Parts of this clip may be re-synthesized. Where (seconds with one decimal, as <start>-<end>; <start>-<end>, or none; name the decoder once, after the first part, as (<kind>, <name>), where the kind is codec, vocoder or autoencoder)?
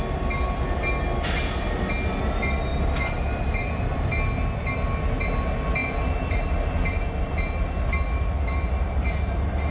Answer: 2.7-4.1 (vocoder, BigVGAN v2); 5.8-7.3